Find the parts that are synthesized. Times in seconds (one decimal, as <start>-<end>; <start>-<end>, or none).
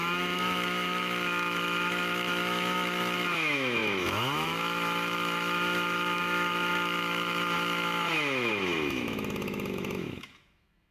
0.0-10.9